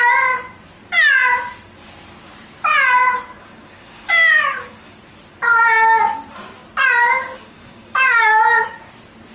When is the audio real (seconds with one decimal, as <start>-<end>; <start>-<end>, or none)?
0.0-3.4; 5.0-7.0; 8.3-9.3